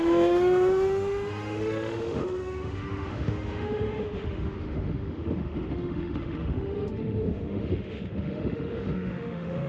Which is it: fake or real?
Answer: fake